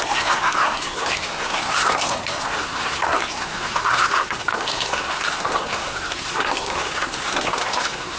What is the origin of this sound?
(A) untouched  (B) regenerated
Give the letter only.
B